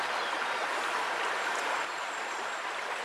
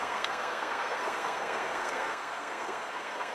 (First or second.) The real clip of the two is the first